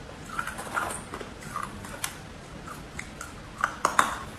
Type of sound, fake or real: real